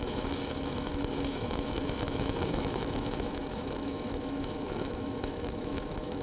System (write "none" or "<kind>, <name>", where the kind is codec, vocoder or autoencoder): autoencoder, DAC-VAE